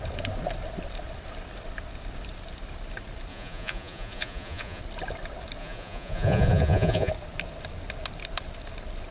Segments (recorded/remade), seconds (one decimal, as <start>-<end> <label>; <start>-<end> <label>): 0.0-3.3 recorded; 3.3-4.8 remade; 4.8-5.6 recorded; 5.6-7.1 remade; 7.1-9.1 recorded